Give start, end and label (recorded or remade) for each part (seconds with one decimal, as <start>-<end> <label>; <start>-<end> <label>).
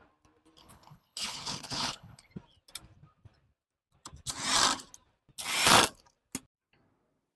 0.0-0.6 recorded; 0.6-2.3 remade; 2.3-7.4 recorded